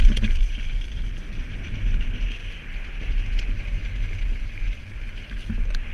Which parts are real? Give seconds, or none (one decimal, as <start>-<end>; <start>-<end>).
none